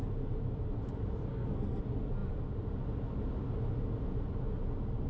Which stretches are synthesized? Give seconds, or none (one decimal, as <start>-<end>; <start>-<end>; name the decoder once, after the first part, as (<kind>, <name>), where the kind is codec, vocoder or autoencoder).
1.3-1.8 (codec, SNAC)